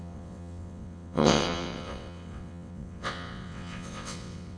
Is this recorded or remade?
remade